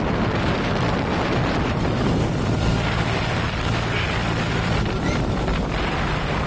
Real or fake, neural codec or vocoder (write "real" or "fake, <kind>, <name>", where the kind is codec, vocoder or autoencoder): fake, vocoder, BigVGAN v2